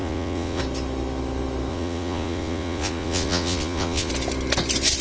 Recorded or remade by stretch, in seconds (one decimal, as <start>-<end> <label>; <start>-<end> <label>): 0.0-0.6 remade; 0.6-1.7 recorded; 1.7-4.1 remade; 4.1-5.0 recorded